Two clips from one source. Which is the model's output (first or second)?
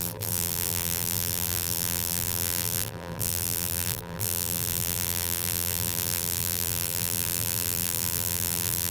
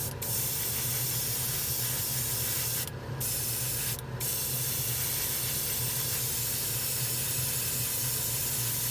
first